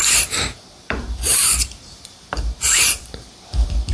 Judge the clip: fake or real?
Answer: fake